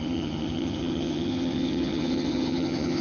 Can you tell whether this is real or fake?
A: fake